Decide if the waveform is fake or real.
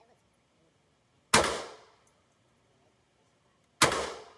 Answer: real